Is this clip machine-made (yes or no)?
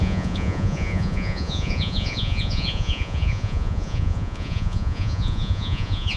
yes